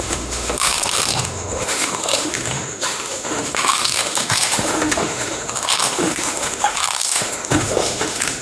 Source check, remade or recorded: remade